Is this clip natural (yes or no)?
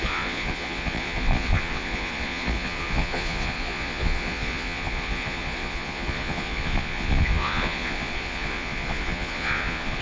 no